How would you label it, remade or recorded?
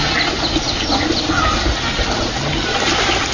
recorded